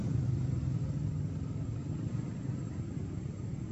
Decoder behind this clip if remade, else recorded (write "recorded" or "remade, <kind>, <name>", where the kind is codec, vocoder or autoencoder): remade, vocoder, BigVGAN v2